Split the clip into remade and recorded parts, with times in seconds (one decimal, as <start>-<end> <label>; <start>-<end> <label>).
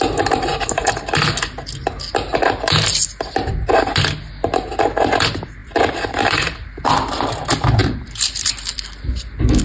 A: 0.0-5.6 recorded; 5.6-6.8 remade; 6.8-7.8 recorded; 7.8-9.1 remade; 9.1-9.6 recorded